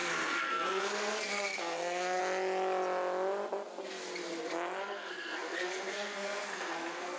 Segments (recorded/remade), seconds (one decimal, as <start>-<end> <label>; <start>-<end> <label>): 0.0-2.2 remade; 2.2-4.8 recorded; 4.8-7.2 remade